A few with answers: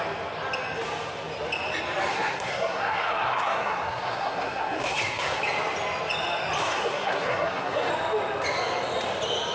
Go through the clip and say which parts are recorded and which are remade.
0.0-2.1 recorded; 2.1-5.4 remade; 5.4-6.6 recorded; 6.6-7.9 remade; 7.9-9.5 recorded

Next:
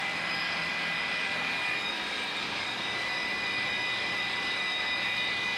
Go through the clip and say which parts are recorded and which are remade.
0.0-5.6 remade